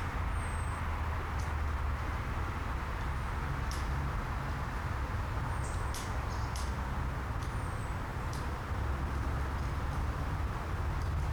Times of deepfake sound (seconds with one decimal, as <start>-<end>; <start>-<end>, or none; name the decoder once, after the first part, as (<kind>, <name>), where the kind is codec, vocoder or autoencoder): 8.1-10.9 (vocoder, BigVGAN v2)